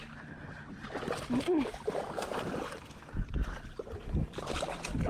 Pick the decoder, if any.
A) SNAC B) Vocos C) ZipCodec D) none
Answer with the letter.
D